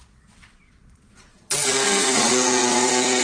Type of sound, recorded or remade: remade